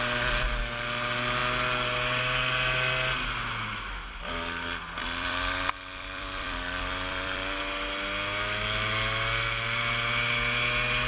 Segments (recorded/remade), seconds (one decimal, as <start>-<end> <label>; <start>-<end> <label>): 0.0-5.0 recorded; 5.0-7.6 remade; 7.6-11.1 recorded